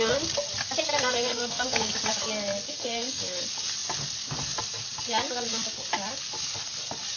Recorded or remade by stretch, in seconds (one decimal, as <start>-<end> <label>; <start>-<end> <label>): 0.0-0.9 recorded; 0.9-1.9 remade; 1.9-2.7 recorded; 2.7-3.2 remade; 3.2-7.2 recorded